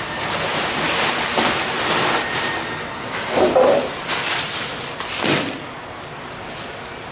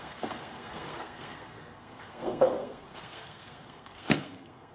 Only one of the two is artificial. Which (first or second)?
second